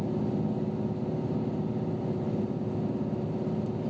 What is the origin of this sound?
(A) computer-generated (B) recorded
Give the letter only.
B